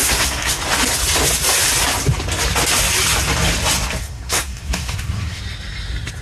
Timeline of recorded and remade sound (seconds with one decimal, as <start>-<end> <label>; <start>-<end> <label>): 0.0-0.6 remade; 0.6-4.0 recorded; 4.0-5.4 remade; 5.4-6.2 recorded